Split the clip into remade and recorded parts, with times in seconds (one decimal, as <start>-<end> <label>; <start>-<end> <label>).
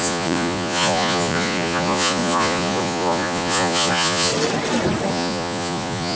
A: 0.0-4.3 remade; 4.3-5.1 recorded; 5.1-6.2 remade